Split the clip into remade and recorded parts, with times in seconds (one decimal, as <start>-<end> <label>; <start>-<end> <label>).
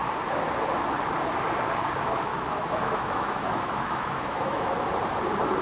0.0-2.3 recorded; 2.3-4.7 remade; 4.7-5.6 recorded